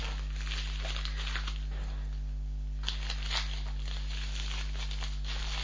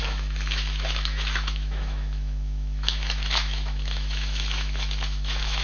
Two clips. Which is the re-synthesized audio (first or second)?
second